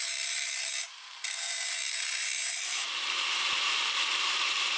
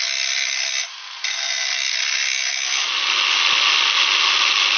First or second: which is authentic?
second